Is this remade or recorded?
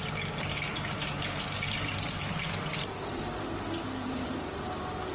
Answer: recorded